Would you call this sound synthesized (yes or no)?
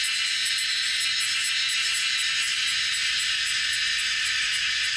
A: no